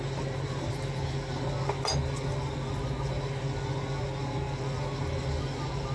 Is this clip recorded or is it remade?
recorded